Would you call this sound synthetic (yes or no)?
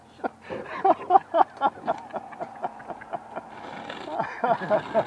no